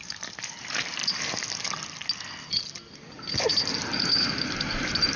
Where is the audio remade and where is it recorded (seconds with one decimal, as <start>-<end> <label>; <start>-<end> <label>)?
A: 0.0-1.0 remade; 1.0-3.4 recorded; 3.4-5.2 remade